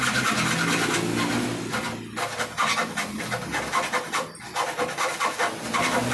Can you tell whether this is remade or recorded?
recorded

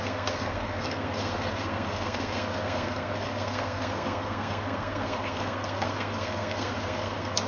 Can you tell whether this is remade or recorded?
remade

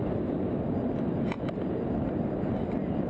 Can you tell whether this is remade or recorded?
recorded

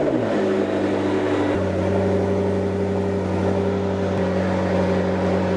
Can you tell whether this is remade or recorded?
recorded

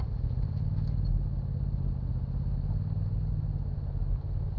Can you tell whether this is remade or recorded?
recorded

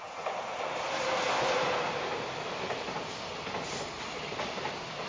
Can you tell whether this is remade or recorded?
recorded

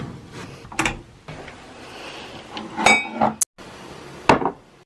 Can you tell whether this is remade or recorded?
recorded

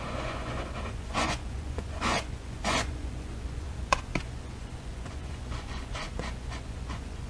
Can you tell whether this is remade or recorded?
remade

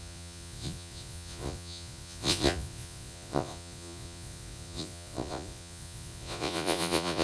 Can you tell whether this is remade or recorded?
remade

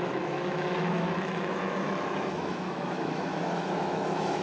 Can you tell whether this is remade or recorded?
remade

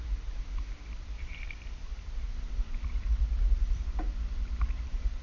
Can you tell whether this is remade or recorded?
remade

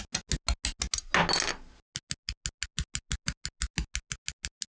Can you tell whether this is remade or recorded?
recorded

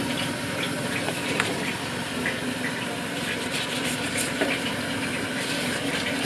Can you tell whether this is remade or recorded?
recorded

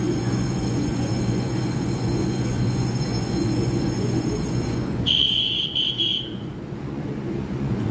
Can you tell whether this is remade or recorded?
remade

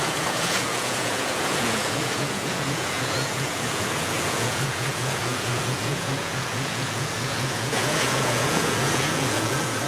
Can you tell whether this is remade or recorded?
remade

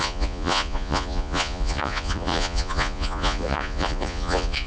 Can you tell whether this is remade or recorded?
remade